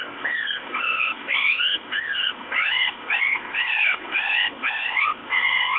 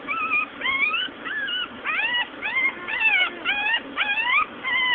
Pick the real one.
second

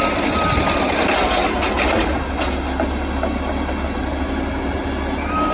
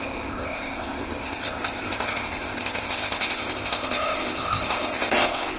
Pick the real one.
first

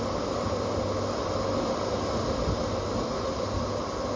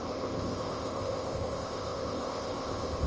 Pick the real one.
first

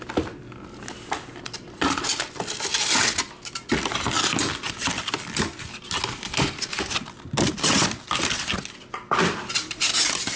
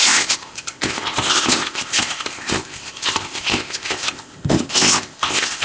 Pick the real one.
first